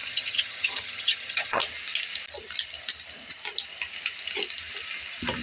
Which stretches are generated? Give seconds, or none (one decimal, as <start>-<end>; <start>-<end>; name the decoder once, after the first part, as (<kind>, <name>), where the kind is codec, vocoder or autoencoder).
0.0-1.6 (vocoder, HiFi-GAN)